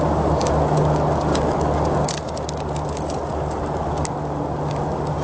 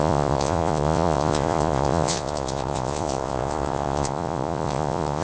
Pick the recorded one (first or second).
first